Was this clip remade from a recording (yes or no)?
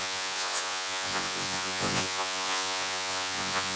yes